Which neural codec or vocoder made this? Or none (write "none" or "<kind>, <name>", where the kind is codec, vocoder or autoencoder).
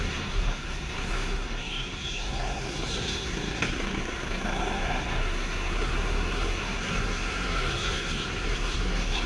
codec, SNAC